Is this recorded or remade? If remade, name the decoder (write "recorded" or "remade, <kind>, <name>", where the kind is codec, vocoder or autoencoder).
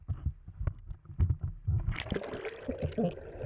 recorded